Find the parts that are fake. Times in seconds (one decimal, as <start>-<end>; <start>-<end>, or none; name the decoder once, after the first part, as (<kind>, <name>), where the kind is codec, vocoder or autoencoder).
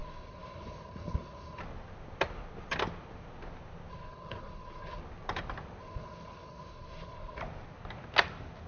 0.0-1.6 (codec, HILCodec); 3.9-5.0; 5.8-7.4